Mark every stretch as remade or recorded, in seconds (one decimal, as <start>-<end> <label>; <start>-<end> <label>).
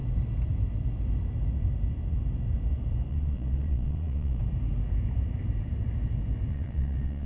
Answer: 0.0-3.1 recorded; 3.1-4.4 remade; 4.4-6.5 recorded; 6.5-7.3 remade